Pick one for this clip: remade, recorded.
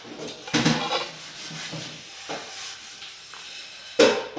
recorded